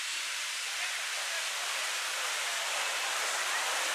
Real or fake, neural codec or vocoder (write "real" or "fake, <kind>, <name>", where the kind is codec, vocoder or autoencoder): real